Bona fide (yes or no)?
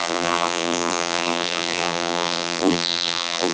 no